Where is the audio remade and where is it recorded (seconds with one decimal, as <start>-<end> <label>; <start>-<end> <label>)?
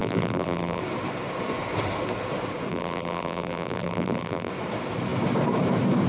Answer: 0.0-0.8 remade; 0.8-2.7 recorded; 2.7-4.5 remade; 4.5-6.1 recorded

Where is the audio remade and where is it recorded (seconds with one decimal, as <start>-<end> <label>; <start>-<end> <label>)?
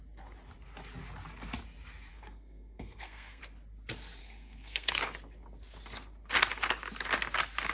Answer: 0.0-2.1 recorded; 2.1-3.4 remade; 3.4-4.2 recorded; 4.2-4.9 remade; 4.9-7.7 recorded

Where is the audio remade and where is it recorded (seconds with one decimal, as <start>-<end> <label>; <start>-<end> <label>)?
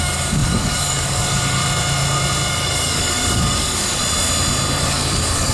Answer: 0.0-1.6 remade; 1.6-2.5 recorded; 2.5-4.0 remade; 4.0-4.8 recorded; 4.8-5.5 remade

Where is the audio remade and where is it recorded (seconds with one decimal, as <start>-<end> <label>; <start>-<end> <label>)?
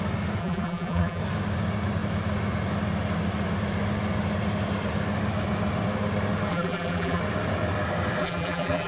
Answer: 0.0-0.4 recorded; 0.4-1.2 remade; 1.2-6.5 recorded; 6.5-7.2 remade; 7.2-8.2 recorded; 8.2-8.9 remade